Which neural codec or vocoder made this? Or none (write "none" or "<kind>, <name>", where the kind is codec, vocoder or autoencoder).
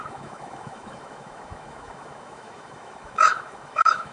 autoencoder, DAC-VAE